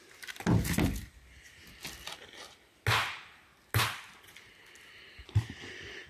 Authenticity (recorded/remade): recorded